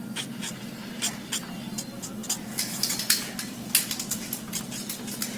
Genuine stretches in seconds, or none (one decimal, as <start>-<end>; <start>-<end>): 0.0-5.4